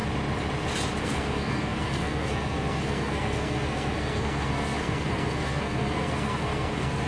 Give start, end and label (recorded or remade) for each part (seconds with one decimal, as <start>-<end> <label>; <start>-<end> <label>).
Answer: 0.0-1.0 recorded; 1.0-7.1 remade